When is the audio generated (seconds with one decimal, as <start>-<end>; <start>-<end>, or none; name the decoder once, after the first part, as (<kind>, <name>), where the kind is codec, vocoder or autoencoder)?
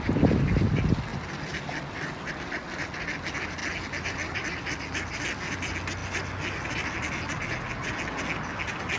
none